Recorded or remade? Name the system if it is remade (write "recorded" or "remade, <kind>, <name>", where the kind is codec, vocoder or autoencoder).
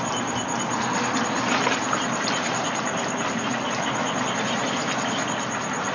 recorded